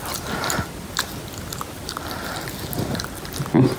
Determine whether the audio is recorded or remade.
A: recorded